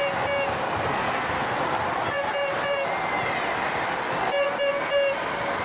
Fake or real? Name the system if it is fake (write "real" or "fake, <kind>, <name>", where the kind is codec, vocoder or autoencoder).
real